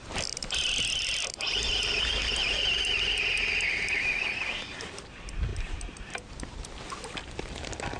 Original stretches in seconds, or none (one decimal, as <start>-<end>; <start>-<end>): 0.0-2.4; 3.1-5.5; 6.1-8.0